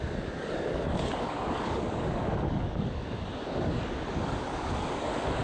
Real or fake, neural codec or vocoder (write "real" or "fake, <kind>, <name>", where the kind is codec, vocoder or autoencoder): fake, codec, DAC